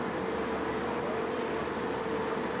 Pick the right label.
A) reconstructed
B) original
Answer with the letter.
B